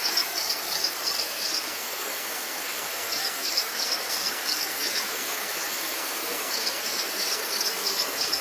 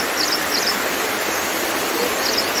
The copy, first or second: first